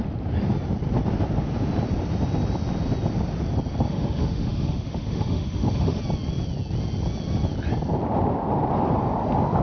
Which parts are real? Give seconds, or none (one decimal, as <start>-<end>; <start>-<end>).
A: 0.0-3.9; 6.0-9.6